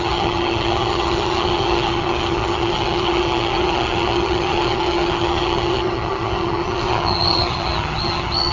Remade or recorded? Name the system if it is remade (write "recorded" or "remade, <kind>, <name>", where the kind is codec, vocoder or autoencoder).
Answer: remade, vocoder, HiFi-GAN